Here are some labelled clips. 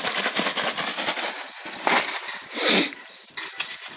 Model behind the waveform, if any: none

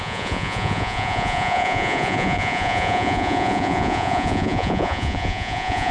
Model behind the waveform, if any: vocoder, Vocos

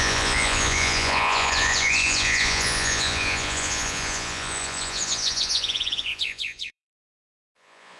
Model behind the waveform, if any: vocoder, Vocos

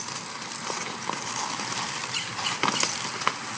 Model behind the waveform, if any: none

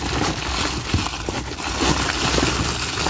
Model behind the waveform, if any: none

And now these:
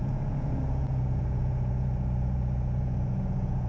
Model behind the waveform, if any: vocoder, Vocos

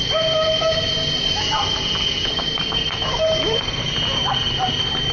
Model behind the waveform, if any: none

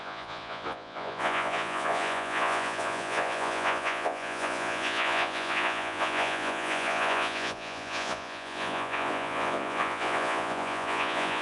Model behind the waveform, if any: vocoder, Vocos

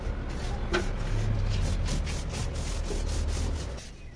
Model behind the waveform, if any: none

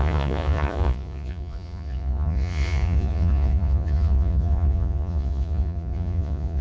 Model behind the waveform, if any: vocoder, Vocos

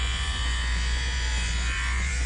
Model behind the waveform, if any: vocoder, Vocos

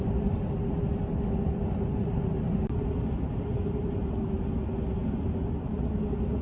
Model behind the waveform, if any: none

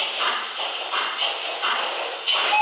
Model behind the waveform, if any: none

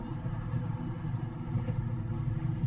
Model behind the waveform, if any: none